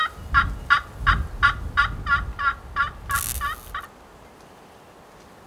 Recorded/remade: recorded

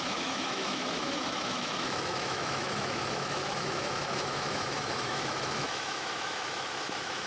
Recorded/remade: remade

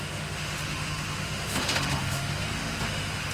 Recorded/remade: remade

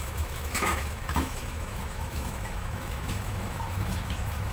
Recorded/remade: remade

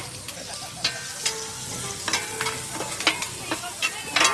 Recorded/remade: recorded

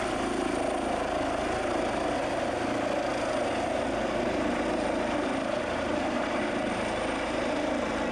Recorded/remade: recorded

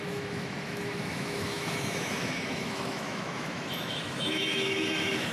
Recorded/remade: remade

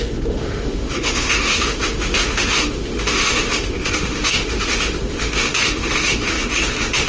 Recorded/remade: remade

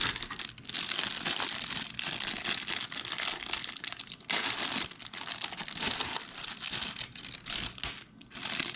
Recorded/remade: recorded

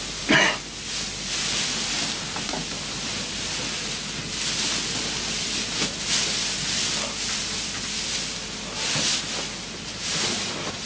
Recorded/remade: recorded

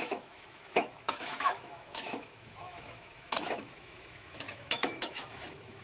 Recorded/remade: remade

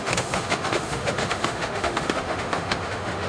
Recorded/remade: remade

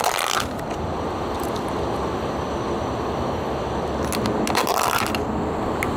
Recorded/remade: recorded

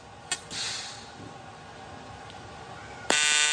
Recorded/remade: recorded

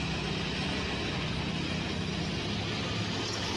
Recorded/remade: recorded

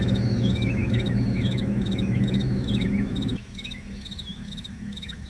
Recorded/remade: remade